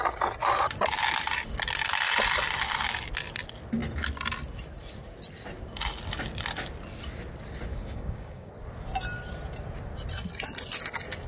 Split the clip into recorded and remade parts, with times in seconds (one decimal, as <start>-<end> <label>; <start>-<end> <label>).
0.0-7.7 recorded; 7.7-8.5 remade; 8.5-11.3 recorded